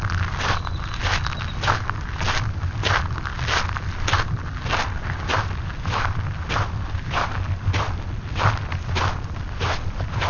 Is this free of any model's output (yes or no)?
yes